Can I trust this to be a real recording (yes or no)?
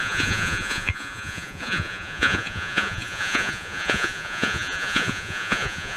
no